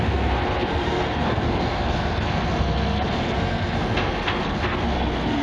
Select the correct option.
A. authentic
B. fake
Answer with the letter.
B